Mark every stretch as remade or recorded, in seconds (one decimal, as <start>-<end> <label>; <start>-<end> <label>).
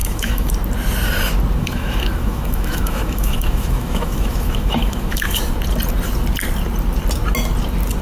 0.0-0.5 remade; 0.5-1.6 recorded; 1.6-5.4 remade; 5.4-8.0 recorded